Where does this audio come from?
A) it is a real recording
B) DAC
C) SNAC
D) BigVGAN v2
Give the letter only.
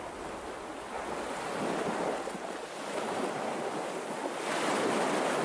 A